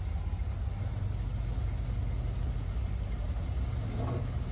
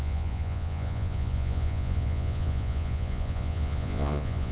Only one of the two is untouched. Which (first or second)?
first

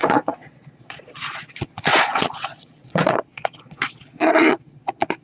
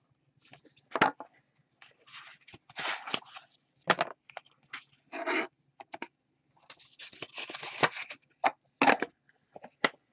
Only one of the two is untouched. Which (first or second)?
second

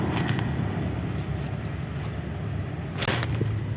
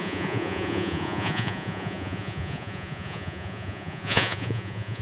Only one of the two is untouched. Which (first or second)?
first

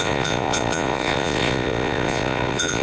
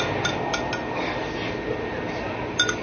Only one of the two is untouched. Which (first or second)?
second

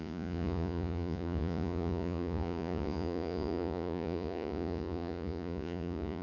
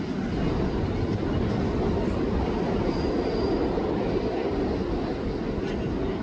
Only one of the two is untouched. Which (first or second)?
second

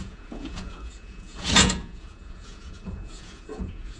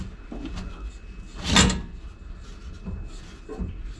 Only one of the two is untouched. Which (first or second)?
second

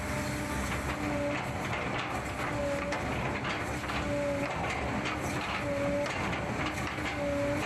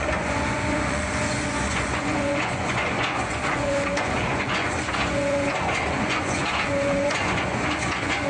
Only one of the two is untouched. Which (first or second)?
first